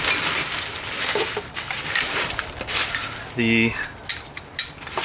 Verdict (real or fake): real